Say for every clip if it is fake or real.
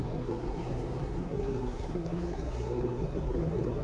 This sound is fake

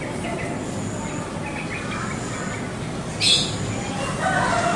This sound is real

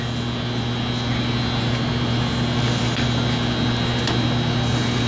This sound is real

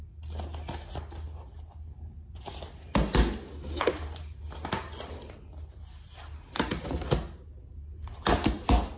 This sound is real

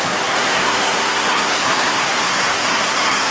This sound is fake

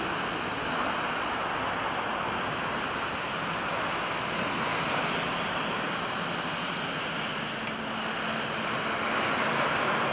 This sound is real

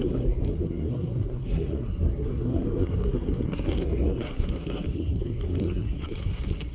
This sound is fake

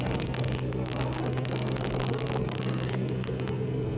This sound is fake